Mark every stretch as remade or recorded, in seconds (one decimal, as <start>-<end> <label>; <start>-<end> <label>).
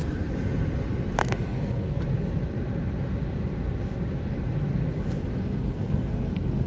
0.0-1.2 recorded; 1.2-2.0 remade; 2.0-5.6 recorded; 5.6-6.7 remade